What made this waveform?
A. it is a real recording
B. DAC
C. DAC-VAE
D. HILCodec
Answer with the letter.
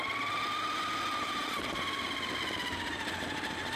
A